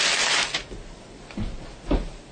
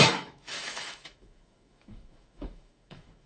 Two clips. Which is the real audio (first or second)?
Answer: first